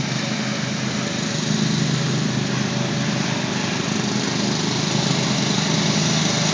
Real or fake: real